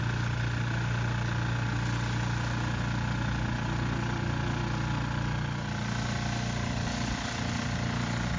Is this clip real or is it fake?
real